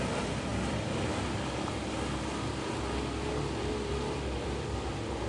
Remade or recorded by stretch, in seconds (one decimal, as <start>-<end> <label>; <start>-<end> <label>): 0.0-5.3 recorded